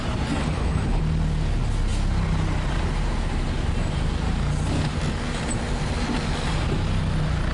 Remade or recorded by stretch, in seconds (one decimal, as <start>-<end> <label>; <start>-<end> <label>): 0.0-0.4 recorded; 0.4-1.0 remade; 1.0-7.5 recorded